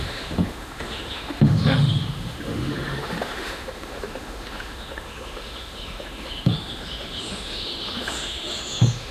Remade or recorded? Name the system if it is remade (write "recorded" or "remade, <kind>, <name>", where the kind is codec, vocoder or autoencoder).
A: remade, autoencoder, DAC-VAE